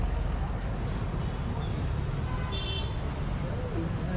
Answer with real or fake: real